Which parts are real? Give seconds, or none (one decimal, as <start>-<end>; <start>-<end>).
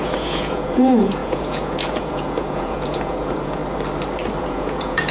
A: 3.6-4.4